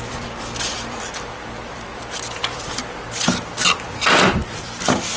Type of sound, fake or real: fake